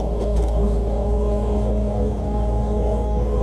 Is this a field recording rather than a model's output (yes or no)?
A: no